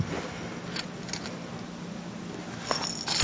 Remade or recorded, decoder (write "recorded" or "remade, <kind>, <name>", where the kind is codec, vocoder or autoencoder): recorded